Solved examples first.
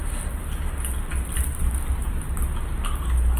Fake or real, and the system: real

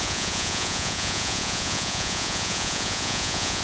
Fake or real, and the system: fake, vocoder, Vocos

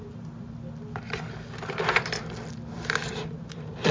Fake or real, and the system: real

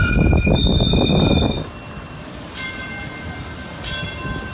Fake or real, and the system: real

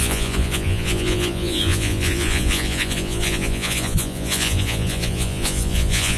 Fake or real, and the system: fake, vocoder, Vocos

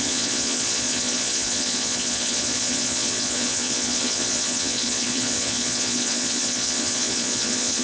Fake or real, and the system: fake, vocoder, Vocos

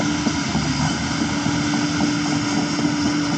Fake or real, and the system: real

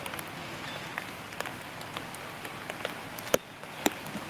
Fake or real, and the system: real